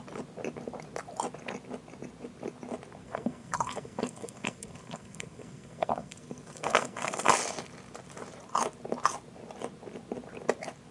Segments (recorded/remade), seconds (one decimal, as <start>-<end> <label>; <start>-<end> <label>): 0.0-3.0 recorded; 3.0-7.3 remade; 7.3-10.9 recorded